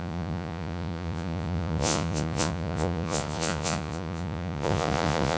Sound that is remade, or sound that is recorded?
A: remade